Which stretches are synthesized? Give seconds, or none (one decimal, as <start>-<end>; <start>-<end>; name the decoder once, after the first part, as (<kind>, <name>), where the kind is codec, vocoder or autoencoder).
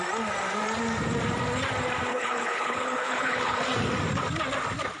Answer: 2.1-3.6 (codec, HILCodec)